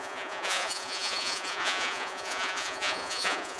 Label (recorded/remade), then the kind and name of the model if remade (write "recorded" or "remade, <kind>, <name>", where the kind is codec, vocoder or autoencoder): remade, vocoder, Vocos